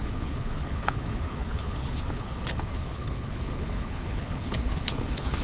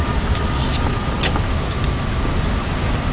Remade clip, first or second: first